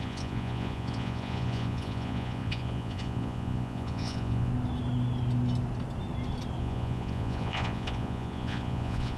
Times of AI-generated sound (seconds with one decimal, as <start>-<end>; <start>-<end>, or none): 0.0-4.5; 6.6-9.2